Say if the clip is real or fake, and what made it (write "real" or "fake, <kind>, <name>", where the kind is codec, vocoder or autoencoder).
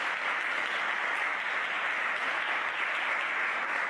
real